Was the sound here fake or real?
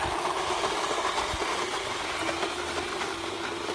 real